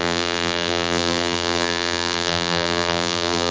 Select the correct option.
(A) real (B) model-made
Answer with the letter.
B